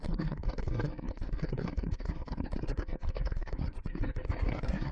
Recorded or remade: remade